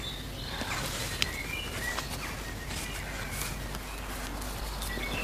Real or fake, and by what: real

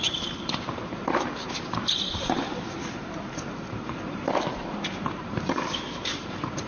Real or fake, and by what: fake, vocoder, BigVGAN v2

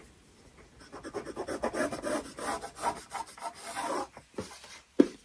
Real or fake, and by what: real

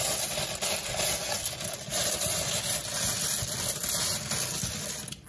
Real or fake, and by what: real